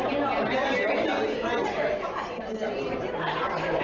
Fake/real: fake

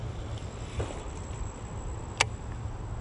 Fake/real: real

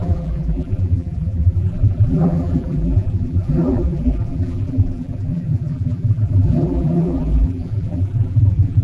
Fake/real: fake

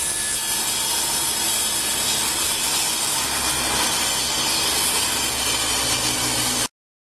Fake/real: real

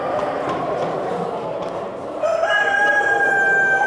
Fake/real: fake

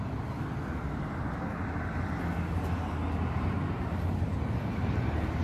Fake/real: real